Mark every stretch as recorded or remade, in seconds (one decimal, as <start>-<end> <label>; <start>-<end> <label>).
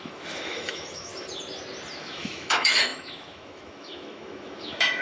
0.0-1.1 remade; 1.1-2.0 recorded; 2.0-5.0 remade